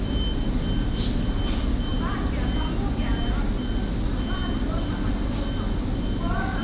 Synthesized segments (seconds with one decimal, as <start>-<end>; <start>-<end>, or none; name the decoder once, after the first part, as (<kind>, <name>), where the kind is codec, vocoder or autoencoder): none